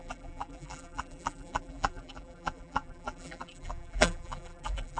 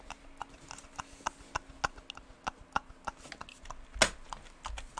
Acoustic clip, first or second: second